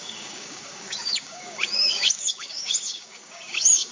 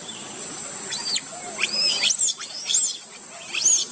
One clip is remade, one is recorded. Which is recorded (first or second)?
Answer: second